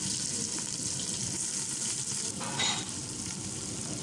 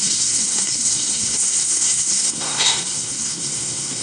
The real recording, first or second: first